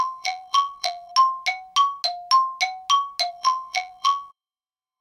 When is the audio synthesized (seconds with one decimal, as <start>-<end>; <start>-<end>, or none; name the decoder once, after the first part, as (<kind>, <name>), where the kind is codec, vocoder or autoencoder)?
0.0-1.1 (vocoder, BigVGAN v2); 3.3-5.0